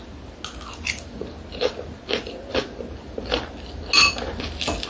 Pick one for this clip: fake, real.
real